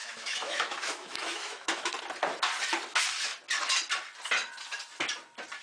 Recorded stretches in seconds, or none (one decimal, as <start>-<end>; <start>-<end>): 1.9-5.6